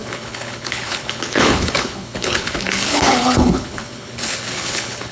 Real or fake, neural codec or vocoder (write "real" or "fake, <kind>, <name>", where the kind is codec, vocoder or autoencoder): fake, codec, HILCodec